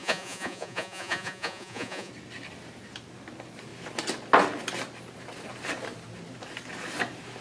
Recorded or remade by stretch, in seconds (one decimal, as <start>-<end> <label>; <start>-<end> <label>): 0.0-2.1 remade; 2.1-7.4 recorded